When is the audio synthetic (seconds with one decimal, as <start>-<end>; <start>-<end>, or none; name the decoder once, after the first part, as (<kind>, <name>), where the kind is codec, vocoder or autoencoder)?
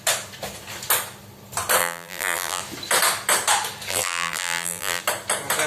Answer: 1.8-2.6 (vocoder, BigVGAN v2); 3.9-5.0